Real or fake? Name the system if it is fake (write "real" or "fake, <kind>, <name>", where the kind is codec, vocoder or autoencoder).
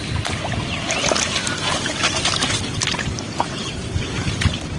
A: real